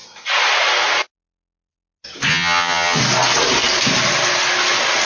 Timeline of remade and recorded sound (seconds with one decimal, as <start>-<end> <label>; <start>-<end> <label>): 0.0-2.3 recorded; 2.3-3.0 remade; 3.0-5.0 recorded